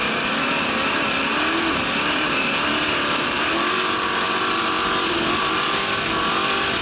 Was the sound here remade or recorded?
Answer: remade